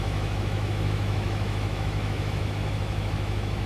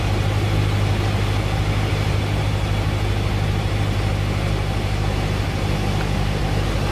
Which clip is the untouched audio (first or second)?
second